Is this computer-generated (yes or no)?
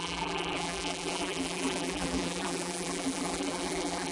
yes